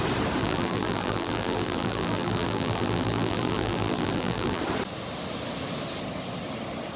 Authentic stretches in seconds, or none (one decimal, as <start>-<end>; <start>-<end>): 0.0-0.4; 4.6-7.0